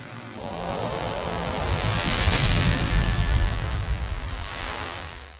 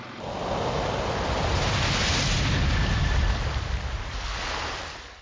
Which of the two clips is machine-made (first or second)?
first